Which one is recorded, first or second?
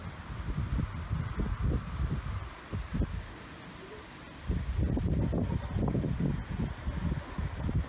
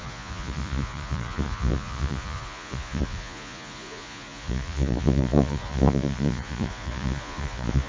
first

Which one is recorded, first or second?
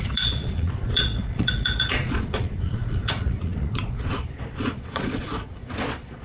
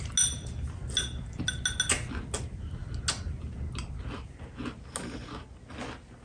second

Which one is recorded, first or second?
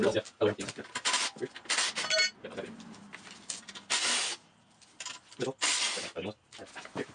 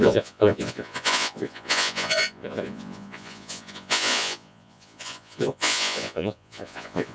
first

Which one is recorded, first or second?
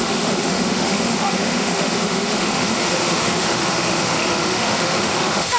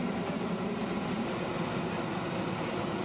second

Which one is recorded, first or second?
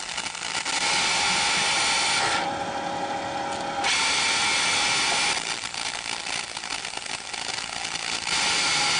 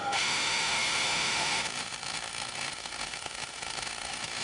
first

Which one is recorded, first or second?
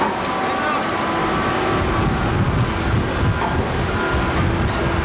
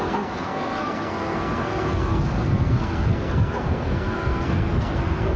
first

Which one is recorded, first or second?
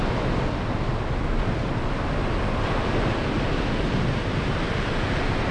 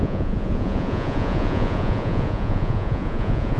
first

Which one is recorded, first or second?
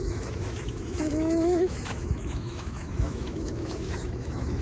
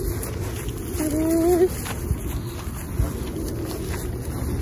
second